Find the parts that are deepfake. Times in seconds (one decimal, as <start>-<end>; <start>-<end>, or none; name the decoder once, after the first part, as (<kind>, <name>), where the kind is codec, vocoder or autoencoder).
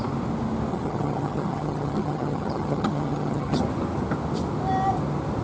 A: 0.7-3.6 (vocoder, HiFi-GAN)